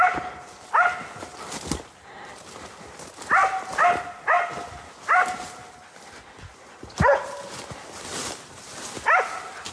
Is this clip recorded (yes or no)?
yes